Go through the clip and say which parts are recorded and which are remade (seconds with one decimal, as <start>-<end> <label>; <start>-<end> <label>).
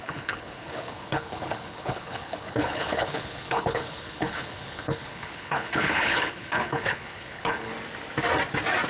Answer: 0.0-7.7 remade; 7.7-8.9 recorded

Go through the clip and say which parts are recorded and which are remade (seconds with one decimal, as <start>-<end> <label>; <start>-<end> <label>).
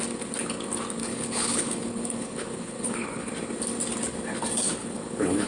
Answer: 0.0-1.0 recorded; 1.0-3.3 remade; 3.3-4.8 recorded; 4.8-5.5 remade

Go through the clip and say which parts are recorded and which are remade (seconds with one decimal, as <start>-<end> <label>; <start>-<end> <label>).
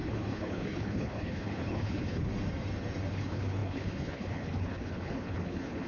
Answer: 0.0-2.3 remade; 2.3-3.1 recorded; 3.1-5.9 remade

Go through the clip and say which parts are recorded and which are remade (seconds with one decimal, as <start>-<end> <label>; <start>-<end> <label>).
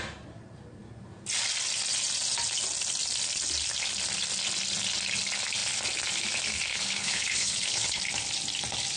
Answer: 0.0-6.7 recorded; 6.7-8.0 remade; 8.0-9.0 recorded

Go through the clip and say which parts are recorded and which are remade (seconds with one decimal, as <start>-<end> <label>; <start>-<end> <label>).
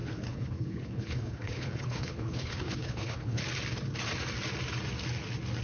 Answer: 0.0-3.4 remade; 3.4-5.6 recorded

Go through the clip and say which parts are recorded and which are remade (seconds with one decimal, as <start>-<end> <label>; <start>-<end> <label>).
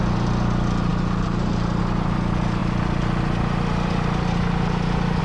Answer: 0.0-5.2 recorded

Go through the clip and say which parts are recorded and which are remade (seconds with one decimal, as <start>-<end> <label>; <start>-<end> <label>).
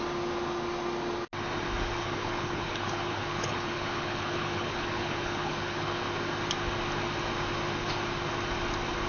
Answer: 0.0-2.0 recorded; 2.0-6.0 remade; 6.0-9.1 recorded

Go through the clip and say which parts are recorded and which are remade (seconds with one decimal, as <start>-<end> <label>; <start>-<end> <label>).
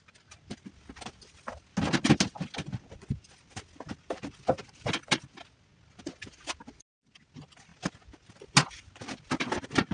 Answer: 0.0-9.9 recorded